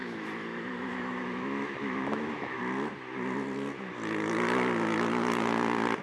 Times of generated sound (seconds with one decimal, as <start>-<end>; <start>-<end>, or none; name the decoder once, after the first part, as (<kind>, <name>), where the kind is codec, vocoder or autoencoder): 0.0-2.6 (autoencoder, DAC-VAE)